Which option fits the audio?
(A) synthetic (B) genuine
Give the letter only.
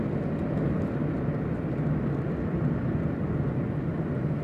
B